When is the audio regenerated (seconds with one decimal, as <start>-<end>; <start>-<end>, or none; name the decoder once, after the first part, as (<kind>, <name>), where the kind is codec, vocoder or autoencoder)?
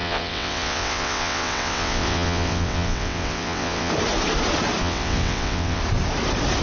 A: 0.0-3.9 (vocoder, WaveNeXt); 4.8-5.8